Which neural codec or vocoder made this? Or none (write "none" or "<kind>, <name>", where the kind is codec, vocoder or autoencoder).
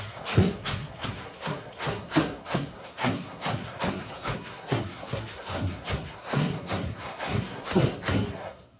codec, SNAC